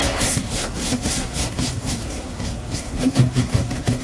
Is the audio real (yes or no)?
no